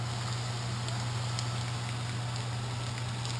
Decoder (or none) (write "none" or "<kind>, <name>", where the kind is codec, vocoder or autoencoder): none